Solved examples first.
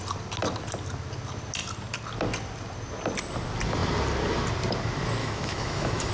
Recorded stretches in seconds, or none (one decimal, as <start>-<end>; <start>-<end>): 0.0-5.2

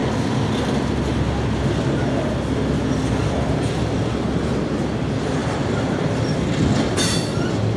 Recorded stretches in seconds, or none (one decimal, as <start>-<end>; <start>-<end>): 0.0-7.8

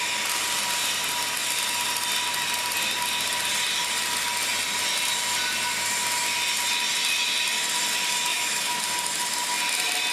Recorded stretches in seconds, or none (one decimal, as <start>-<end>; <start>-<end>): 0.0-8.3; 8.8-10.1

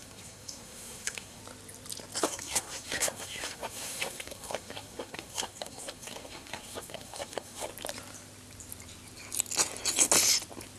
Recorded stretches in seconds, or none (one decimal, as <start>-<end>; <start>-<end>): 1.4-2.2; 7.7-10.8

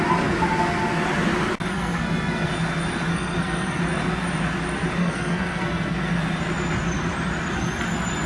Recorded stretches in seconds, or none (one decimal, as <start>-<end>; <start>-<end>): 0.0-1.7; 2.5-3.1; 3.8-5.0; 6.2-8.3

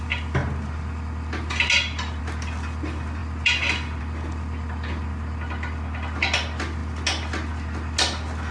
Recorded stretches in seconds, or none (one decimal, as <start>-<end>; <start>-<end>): 0.0-8.5

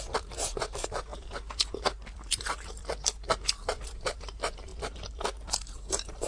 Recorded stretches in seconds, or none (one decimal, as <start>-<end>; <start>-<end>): 1.1-2.3; 2.8-3.4; 4.7-5.5